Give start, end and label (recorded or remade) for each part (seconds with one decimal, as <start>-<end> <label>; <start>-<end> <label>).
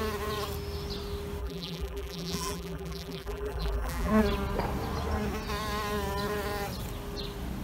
0.0-1.4 recorded; 1.4-4.1 remade; 4.1-7.6 recorded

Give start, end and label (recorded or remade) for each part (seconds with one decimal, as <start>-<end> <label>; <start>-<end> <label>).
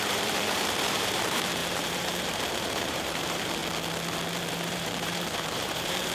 0.0-3.6 remade; 3.6-4.5 recorded; 4.5-6.1 remade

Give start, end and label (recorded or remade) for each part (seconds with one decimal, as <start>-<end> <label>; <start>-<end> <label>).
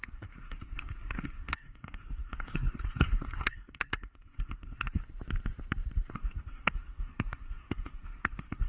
0.0-5.0 remade; 5.0-6.1 recorded; 6.1-8.7 remade